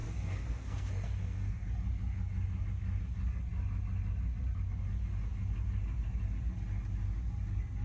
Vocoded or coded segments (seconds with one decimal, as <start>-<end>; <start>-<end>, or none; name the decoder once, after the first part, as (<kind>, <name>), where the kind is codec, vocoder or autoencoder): 0.0-1.6 (codec, SNAC)